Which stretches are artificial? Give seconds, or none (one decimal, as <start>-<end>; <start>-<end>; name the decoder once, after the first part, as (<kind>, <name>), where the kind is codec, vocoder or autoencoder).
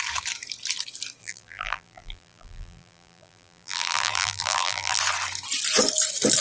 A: 1.2-5.0 (vocoder, BigVGAN v2)